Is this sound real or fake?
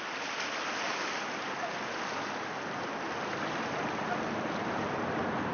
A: real